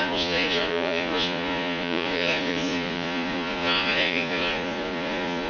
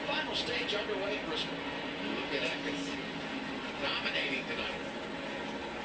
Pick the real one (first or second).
second